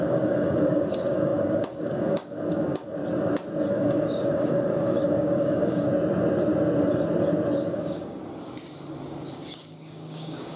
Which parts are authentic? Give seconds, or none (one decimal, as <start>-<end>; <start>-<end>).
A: 3.0-3.7; 5.9-7.7; 8.2-9.3

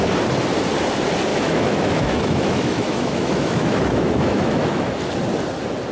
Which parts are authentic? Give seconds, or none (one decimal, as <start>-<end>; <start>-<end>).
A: 0.0-1.3; 4.8-5.9

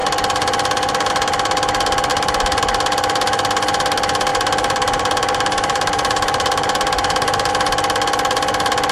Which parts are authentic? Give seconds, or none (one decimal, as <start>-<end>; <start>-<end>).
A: 0.0-2.1; 2.6-4.3; 7.5-8.9